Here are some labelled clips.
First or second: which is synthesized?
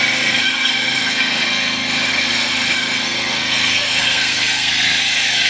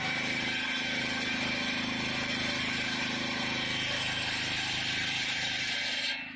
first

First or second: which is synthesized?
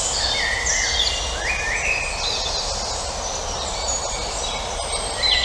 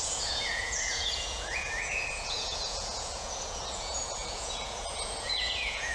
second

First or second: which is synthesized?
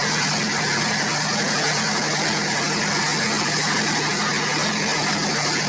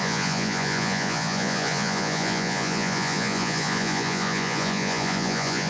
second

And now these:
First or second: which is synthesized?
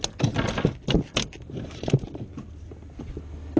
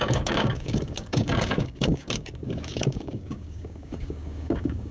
second